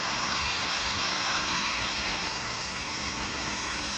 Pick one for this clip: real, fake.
fake